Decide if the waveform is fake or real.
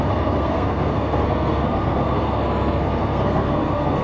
fake